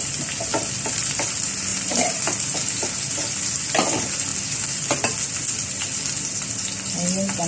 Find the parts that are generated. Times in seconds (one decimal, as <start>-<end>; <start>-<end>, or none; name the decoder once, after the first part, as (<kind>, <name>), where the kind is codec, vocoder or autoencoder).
1.7-2.2 (vocoder, BigVGAN v2)

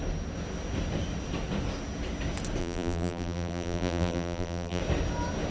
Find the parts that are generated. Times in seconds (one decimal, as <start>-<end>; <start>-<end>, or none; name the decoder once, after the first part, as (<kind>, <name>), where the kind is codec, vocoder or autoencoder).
2.6-4.8 (vocoder, BigVGAN v2)

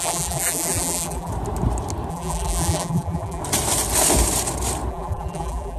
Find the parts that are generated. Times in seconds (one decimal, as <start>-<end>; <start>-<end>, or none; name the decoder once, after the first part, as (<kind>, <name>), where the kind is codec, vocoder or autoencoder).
0.0-1.3 (vocoder, BigVGAN v2); 2.1-3.4; 4.9-5.8

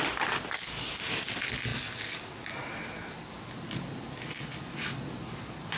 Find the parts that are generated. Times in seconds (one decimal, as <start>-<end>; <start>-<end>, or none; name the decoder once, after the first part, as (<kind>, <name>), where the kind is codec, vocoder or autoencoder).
none

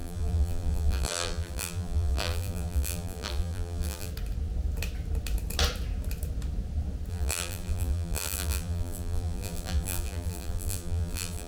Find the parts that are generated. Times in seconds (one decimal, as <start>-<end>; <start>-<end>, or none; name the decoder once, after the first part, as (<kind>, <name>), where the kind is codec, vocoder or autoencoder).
0.0-4.1 (vocoder, BigVGAN v2); 7.1-11.5